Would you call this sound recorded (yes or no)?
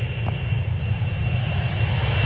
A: yes